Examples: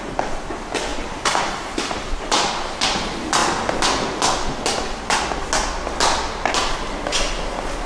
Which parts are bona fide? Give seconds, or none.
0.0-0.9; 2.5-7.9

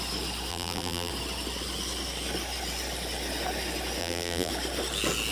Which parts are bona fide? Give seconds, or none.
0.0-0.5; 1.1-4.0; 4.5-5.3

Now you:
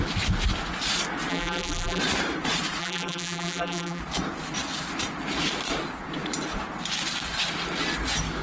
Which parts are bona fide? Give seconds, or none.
0.0-1.3; 2.0-2.8; 4.0-8.4

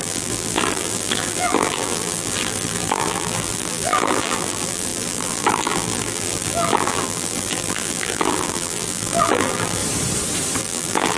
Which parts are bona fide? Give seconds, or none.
9.8-10.6

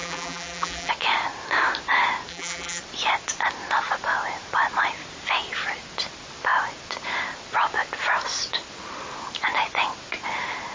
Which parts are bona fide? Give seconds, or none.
0.9-2.3; 2.8-10.7

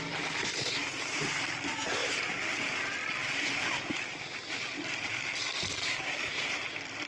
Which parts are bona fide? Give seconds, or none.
none

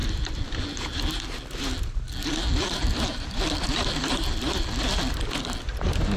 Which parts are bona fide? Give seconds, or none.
1.6-3.1; 4.8-6.2